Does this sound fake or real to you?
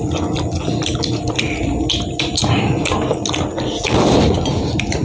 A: real